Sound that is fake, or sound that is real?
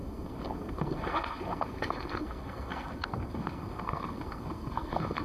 fake